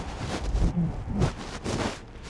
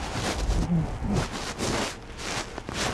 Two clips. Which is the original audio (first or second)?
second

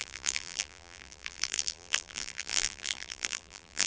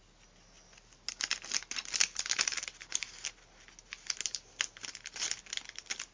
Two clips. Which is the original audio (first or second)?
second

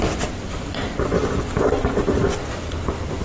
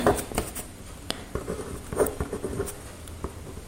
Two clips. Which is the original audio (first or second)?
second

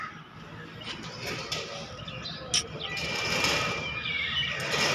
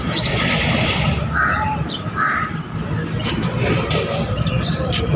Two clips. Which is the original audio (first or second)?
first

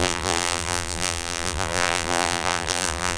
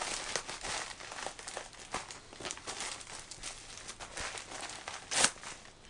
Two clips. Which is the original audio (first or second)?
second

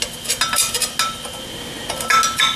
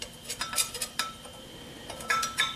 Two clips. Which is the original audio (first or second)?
first